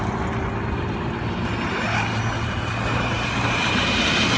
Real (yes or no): yes